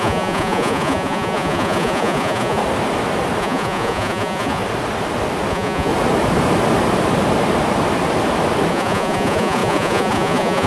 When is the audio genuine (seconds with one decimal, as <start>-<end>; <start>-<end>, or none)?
2.6-3.4; 4.6-5.5; 5.9-8.7